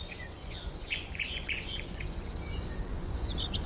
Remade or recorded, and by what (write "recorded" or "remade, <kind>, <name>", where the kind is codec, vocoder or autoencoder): remade, vocoder, Vocos